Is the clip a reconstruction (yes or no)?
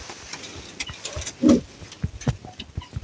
no